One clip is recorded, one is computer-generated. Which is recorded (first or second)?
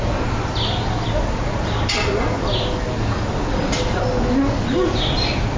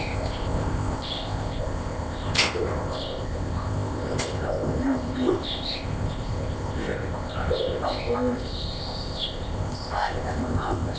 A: first